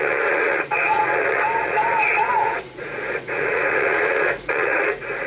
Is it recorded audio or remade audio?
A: remade